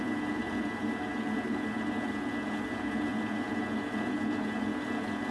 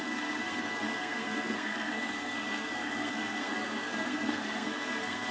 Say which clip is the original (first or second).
first